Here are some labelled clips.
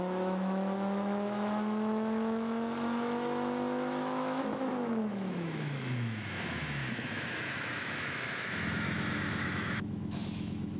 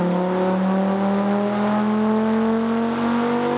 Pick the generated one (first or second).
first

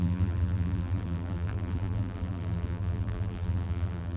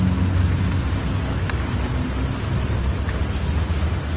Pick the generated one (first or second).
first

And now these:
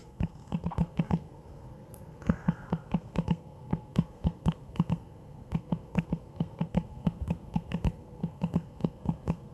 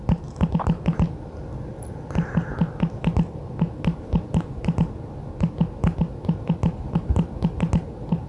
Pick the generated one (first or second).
first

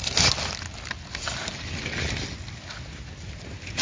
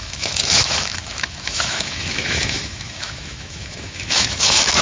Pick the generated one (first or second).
second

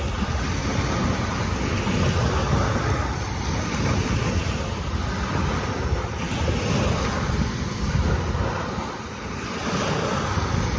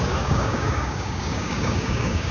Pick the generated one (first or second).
second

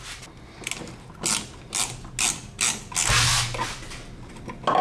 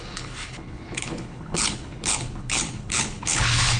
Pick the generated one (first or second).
second